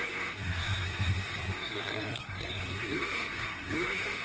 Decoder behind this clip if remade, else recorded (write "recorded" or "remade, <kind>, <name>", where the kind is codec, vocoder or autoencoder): remade, codec, SNAC